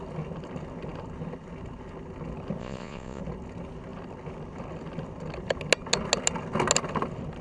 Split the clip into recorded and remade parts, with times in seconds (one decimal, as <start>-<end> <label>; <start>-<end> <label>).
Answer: 0.0-2.6 recorded; 2.6-3.2 remade; 3.2-7.4 recorded